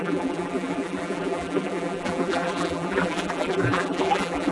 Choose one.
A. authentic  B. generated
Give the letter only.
B